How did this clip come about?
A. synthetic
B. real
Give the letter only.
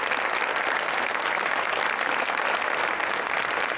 B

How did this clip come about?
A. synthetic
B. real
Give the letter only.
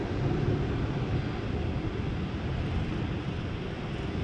B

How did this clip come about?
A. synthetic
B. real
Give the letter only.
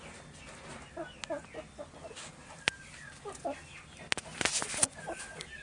B